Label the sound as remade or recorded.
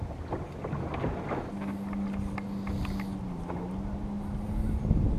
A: recorded